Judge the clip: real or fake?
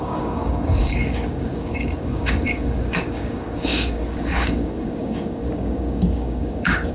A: fake